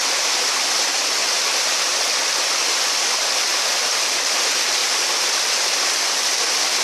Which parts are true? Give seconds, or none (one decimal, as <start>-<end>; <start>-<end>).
0.0-1.2; 1.8-3.5; 4.3-6.8